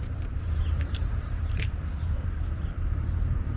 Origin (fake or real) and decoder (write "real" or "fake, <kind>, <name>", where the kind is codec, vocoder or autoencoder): fake, vocoder, BigVGAN v2